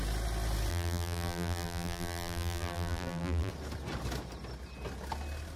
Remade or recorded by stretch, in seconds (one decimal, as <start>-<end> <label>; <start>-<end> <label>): 0.0-0.7 recorded; 0.7-3.5 remade; 3.5-5.6 recorded